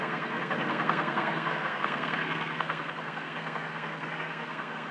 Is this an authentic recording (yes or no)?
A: no